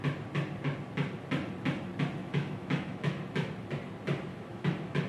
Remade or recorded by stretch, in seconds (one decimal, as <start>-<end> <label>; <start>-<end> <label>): 0.0-2.2 recorded; 2.2-3.5 remade; 3.5-4.3 recorded; 4.3-5.1 remade